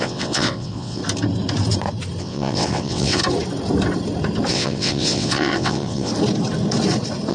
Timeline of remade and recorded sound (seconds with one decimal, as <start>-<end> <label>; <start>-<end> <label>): 0.0-1.0 remade; 1.0-2.2 recorded; 2.2-3.2 remade; 3.2-4.5 recorded; 4.5-6.1 remade; 6.1-7.3 recorded